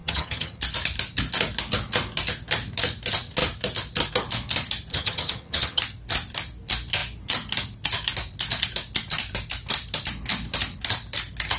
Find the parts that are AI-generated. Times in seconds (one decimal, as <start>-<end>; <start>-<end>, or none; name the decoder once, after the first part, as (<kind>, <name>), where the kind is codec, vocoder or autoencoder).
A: 0.0-0.6 (vocoder, HiFi-GAN); 4.9-5.8